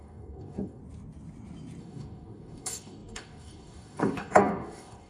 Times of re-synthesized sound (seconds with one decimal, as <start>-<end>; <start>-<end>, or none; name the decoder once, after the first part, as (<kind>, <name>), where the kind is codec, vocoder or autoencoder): 0.0-0.8 (codec, DAC); 1.8-5.1